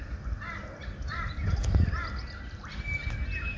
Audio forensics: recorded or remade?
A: recorded